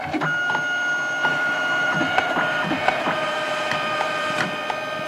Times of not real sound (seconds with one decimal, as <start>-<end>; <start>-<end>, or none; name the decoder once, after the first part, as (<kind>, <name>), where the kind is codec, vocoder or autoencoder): 1.3-4.4 (vocoder, BigVGAN v2)